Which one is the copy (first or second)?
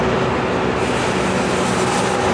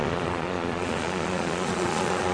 second